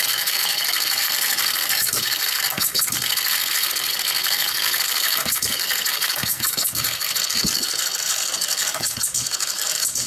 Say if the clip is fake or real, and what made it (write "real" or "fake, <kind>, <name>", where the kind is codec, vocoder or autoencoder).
fake, codec, SNAC